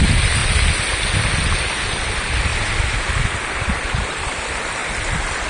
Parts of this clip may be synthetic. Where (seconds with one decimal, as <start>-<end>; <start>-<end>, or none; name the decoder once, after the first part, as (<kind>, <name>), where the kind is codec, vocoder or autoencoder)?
0.0-0.4 (vocoder, BigVGAN v2); 1.4-2.5; 3.5-5.5